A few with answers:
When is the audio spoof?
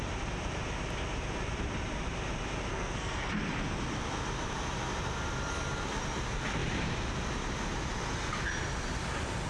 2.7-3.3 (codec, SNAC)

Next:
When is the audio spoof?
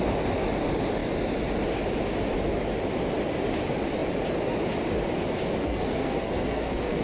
5.6-7.0 (codec, SNAC)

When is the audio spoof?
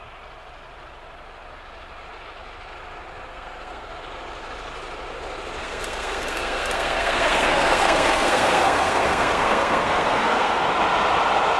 3.3-3.9 (codec, SNAC); 5.6-10.7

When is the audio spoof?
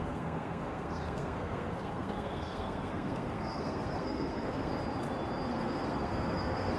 0.0-4.7 (codec, SNAC); 5.5-6.8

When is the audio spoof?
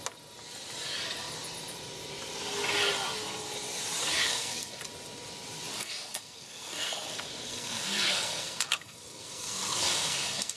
4.2-4.8 (codec, SNAC); 5.8-10.6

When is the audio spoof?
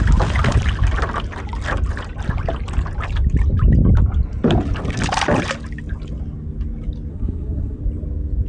7.1-7.8 (codec, SNAC)